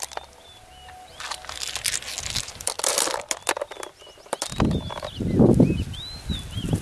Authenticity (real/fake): real